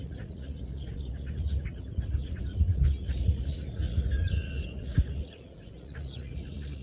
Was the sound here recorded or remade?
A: remade